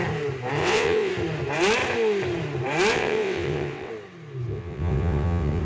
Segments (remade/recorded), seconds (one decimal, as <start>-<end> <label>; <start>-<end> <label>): 0.0-0.6 recorded; 0.6-1.1 remade; 1.1-2.9 recorded; 2.9-3.9 remade; 3.9-4.5 recorded; 4.5-5.6 remade